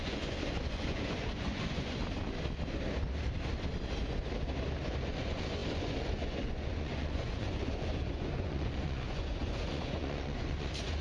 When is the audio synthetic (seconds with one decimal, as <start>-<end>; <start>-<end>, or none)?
0.0-2.0; 5.0-11.0